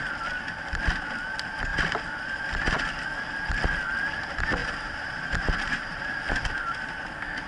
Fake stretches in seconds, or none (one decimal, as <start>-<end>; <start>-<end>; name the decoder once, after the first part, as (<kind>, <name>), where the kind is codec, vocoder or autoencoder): 4.6-6.2 (vocoder, BigVGAN v2)